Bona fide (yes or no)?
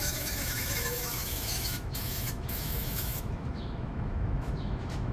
no